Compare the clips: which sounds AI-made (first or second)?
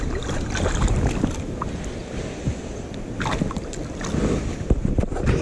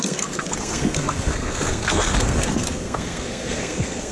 second